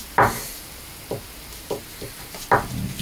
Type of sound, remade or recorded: recorded